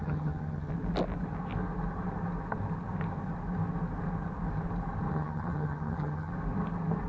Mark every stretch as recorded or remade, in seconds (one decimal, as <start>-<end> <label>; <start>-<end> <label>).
0.0-0.7 remade; 0.7-5.1 recorded; 5.1-6.3 remade; 6.3-7.1 recorded